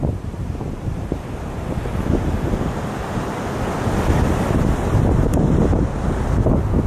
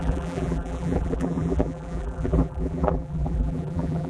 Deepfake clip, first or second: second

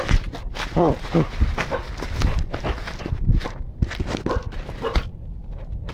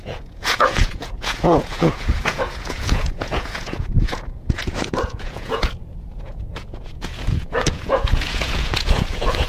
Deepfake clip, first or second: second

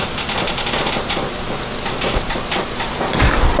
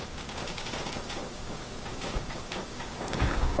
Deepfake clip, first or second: second